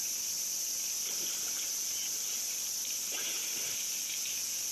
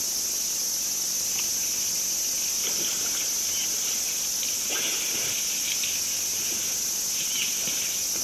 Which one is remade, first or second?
first